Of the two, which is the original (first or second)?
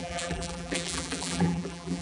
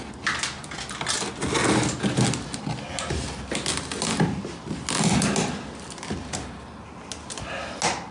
second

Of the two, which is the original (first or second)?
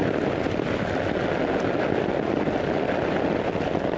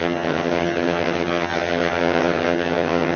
first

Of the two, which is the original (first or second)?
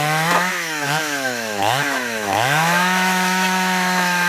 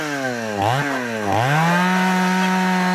second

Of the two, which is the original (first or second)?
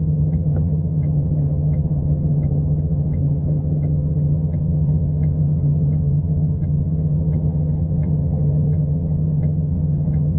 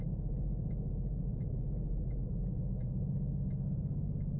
second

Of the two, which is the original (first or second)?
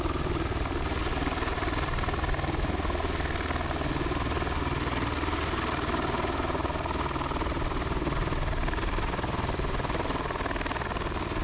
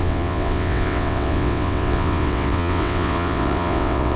first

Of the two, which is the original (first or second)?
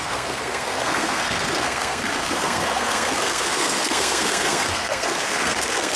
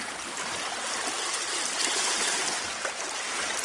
second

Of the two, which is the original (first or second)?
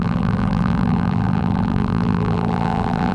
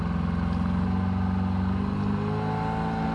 second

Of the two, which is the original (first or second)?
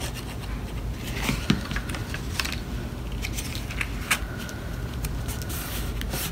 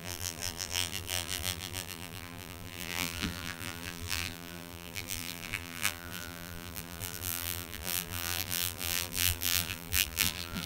first